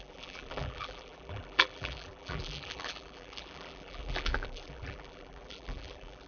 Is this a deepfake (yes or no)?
yes